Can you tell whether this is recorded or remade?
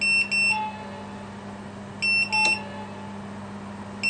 recorded